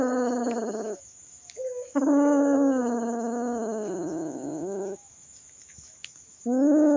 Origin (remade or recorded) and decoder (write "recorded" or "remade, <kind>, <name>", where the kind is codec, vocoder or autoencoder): remade, autoencoder, DAC-VAE